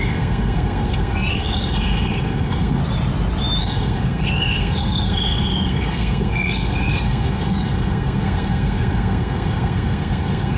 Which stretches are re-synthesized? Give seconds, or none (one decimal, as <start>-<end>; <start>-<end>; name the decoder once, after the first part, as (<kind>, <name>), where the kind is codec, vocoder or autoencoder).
0.0-2.8 (codec, SNAC); 3.6-10.6